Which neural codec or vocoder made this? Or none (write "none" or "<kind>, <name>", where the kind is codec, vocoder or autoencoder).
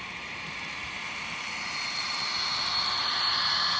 vocoder, BigVGAN v2